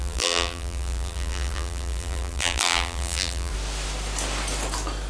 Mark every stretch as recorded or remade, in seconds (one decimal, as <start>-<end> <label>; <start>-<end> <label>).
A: 0.0-3.5 remade; 3.5-5.1 recorded